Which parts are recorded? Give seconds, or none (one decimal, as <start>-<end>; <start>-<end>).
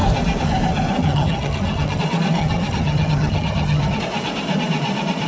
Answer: 0.0-1.0; 2.0-2.4; 4.0-5.3